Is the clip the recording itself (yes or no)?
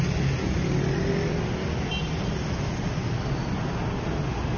yes